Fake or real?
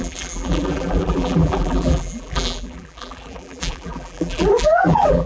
fake